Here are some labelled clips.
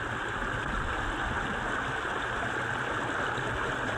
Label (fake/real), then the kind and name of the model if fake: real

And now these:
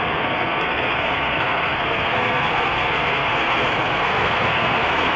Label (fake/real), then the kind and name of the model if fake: fake, codec, SNAC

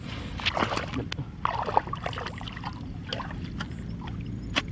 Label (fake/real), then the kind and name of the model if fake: real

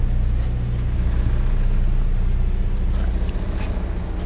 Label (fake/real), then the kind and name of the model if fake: real